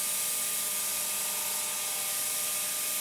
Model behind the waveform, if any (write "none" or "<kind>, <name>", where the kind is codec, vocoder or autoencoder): none